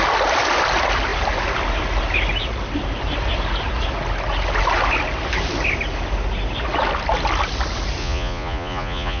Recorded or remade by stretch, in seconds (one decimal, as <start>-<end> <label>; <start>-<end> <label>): 0.0-8.0 recorded; 8.0-9.2 remade